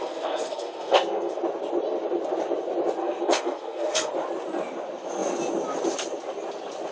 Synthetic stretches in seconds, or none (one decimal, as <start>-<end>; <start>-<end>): 0.0-1.4; 3.0-4.1